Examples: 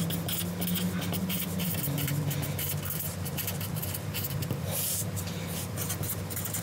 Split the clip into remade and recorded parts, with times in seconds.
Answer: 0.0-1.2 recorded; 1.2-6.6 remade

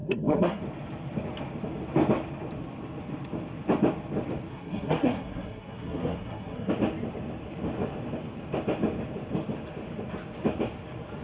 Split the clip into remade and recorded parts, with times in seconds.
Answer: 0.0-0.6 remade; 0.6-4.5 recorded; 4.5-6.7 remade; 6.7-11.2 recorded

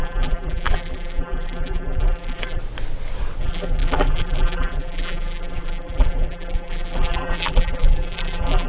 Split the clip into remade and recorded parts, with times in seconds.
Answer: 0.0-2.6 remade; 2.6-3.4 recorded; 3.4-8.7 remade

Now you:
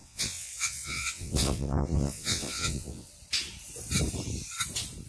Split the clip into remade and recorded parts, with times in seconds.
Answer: 0.0-3.1 remade; 3.1-5.1 recorded